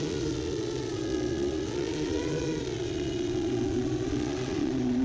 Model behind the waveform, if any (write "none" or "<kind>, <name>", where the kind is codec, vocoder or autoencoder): vocoder, Vocos